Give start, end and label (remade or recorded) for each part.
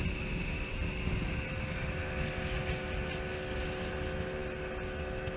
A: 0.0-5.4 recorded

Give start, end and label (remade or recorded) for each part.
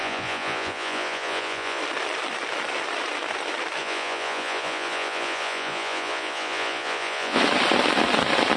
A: 0.0-1.8 remade; 1.8-3.8 recorded; 3.8-7.4 remade; 7.4-8.6 recorded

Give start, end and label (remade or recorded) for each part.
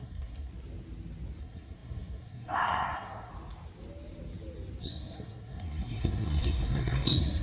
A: 0.0-0.5 remade; 0.5-1.4 recorded; 1.4-3.3 remade; 3.3-4.8 recorded; 4.8-7.4 remade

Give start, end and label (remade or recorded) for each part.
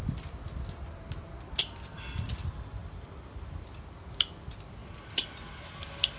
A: 0.0-6.2 recorded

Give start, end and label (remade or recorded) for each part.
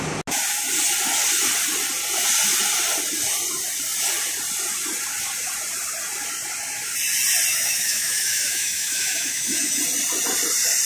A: 0.0-7.5 recorded; 7.5-9.8 remade; 9.8-10.9 recorded